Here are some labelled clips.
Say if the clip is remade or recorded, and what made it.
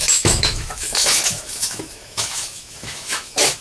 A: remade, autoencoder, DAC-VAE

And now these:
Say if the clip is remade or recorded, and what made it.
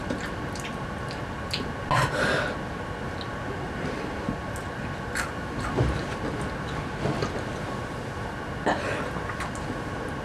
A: recorded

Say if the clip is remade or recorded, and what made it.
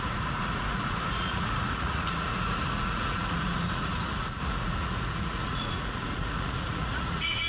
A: remade, vocoder, Vocos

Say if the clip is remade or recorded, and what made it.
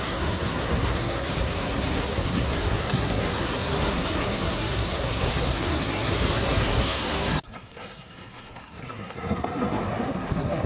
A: remade, codec, SNAC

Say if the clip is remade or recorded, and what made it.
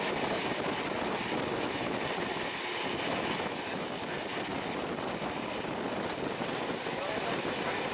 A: recorded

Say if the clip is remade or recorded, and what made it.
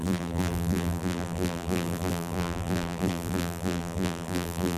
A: remade, vocoder, BigVGAN v2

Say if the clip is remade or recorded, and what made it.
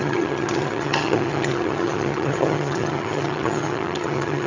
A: remade, vocoder, HiFi-GAN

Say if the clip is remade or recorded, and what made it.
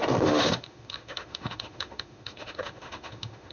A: remade, autoencoder, DAC-VAE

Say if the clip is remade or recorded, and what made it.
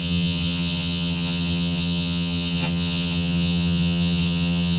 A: remade, vocoder, HiFi-GAN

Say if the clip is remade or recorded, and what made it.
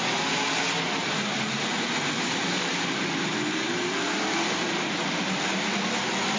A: recorded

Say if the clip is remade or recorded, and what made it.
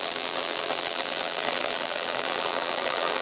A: remade, vocoder, BigVGAN v2